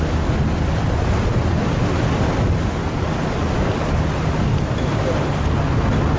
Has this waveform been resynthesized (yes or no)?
no